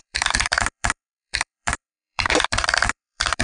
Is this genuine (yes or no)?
no